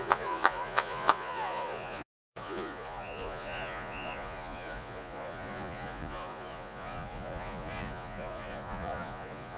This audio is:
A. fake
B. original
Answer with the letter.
A